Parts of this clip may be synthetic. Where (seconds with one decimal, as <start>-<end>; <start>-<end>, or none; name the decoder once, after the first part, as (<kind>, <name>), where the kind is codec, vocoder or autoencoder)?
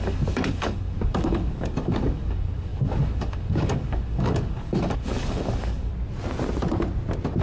0.0-5.9 (codec, DAC)